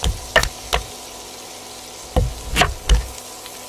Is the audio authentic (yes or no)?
yes